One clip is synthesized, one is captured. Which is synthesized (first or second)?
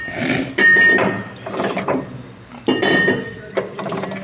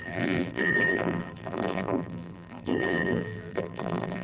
second